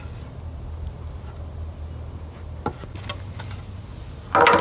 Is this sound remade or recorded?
recorded